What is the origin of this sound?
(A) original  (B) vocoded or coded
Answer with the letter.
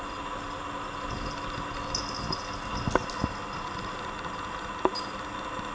A